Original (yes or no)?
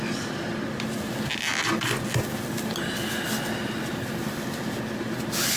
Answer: yes